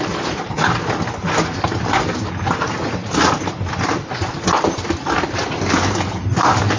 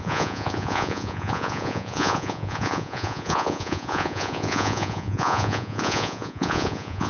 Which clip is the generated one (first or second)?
second